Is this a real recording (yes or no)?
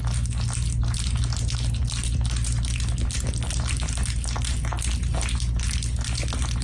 yes